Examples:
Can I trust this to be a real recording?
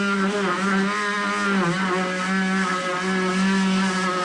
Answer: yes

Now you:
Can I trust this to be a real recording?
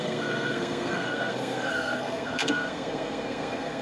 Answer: no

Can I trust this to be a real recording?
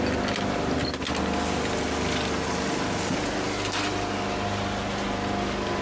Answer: yes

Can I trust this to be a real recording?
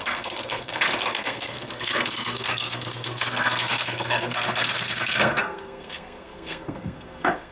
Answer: no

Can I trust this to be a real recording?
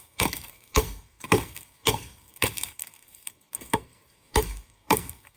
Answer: no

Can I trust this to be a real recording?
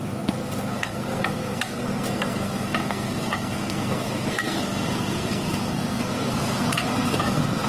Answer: no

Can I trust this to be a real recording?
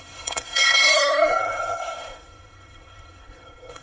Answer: no